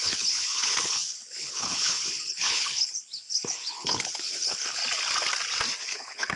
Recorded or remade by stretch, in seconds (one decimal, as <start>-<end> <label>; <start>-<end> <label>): 0.0-4.8 remade; 4.8-5.8 recorded; 5.8-6.4 remade